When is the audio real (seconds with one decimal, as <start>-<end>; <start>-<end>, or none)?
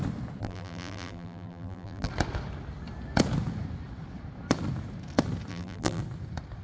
0.0-0.4; 2.1-5.5; 6.0-6.6